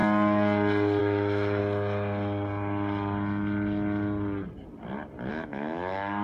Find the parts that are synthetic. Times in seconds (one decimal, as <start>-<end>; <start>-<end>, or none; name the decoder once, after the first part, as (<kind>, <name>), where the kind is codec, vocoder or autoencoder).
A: 1.0-1.6 (autoencoder, DAC-VAE); 5.3-6.2